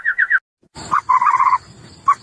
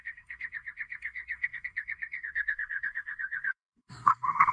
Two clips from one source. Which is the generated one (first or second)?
second